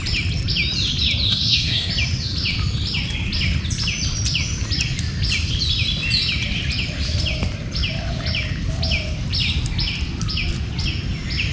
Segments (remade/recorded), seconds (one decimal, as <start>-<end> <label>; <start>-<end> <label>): 0.0-1.3 recorded; 1.3-1.9 remade; 1.9-11.5 recorded